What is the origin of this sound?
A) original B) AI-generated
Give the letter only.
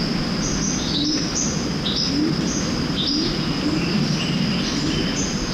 A